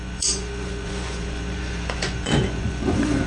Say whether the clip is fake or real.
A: fake